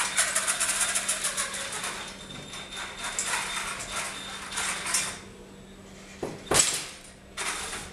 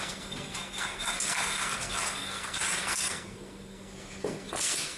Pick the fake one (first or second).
second